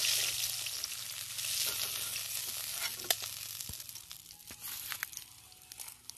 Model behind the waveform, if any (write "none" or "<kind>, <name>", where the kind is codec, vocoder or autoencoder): none